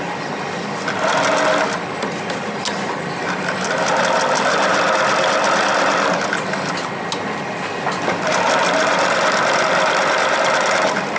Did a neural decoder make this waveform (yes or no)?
no